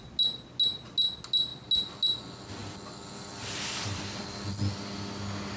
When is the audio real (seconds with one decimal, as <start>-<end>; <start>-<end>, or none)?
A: 0.0-5.6